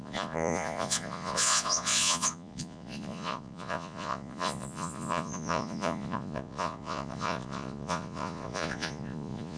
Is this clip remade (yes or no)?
yes